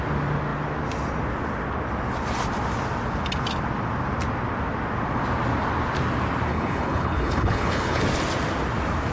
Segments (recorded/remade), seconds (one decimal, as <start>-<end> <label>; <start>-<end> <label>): 0.0-6.5 recorded; 6.5-8.0 remade; 8.0-9.1 recorded